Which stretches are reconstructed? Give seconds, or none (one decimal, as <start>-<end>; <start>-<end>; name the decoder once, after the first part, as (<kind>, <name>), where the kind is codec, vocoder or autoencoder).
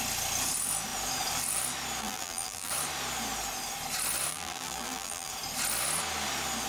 2.0-2.7 (vocoder, BigVGAN v2); 4.3-5.3